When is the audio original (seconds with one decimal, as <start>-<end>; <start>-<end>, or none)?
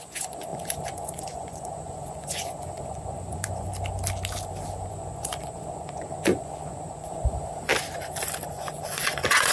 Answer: 3.7-4.9; 7.7-8.5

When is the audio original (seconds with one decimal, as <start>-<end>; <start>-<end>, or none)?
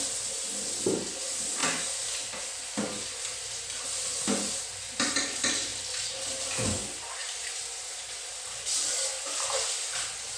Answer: 0.0-10.4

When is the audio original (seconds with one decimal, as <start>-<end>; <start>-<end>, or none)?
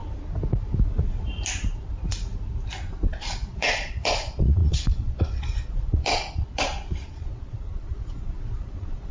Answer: 0.0-3.1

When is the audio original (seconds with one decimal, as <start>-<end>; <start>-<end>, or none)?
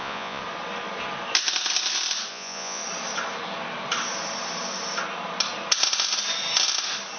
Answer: 0.4-2.3; 2.8-7.2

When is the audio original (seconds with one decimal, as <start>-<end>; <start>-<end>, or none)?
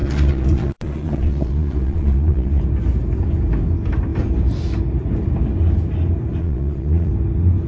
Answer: 2.6-6.4; 7.1-7.7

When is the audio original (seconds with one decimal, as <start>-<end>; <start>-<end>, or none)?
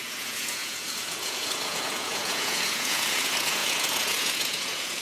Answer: none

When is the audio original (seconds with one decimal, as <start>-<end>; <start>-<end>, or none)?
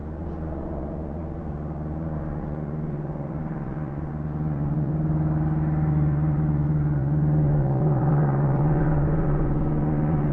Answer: 4.9-5.9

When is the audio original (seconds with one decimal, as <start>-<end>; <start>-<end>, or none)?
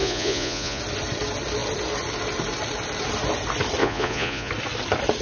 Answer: 0.8-3.8; 4.5-5.2